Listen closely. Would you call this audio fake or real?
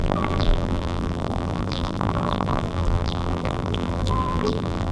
fake